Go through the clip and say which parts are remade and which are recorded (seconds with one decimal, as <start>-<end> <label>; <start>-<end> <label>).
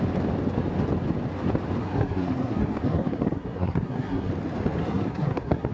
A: 0.0-1.8 recorded; 1.8-4.3 remade; 4.3-4.8 recorded; 4.8-5.7 remade